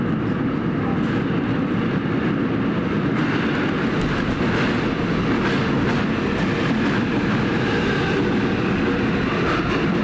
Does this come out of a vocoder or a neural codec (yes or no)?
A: no